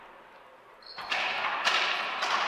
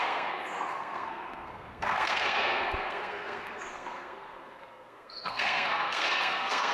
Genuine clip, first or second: first